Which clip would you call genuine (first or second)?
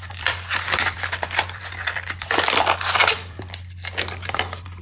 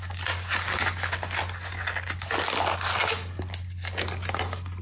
second